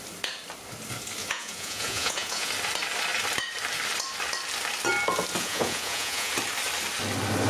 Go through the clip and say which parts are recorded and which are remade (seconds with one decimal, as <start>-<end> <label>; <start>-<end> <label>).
0.0-1.2 recorded; 1.2-2.5 remade; 2.5-5.4 recorded; 5.4-6.3 remade; 6.3-7.5 recorded